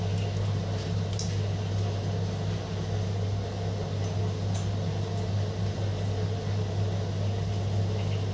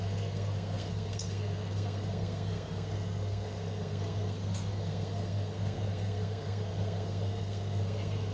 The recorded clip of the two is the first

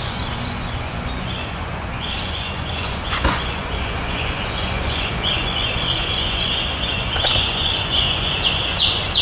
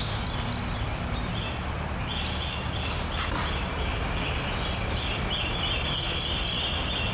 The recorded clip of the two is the second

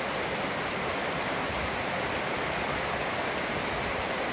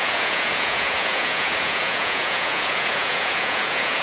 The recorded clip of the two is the first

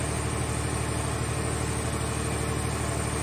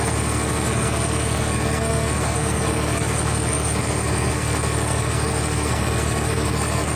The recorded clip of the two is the first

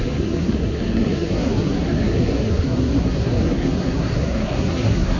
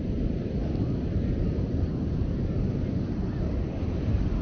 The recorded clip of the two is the second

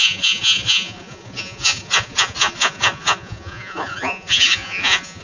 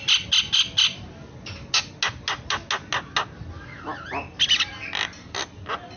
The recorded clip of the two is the second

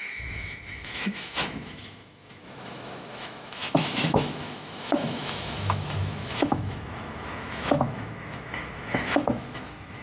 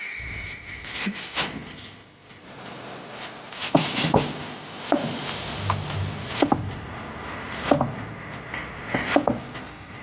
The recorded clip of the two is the second